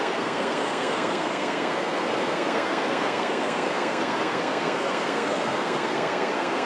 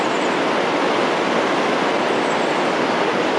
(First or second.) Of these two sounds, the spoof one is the first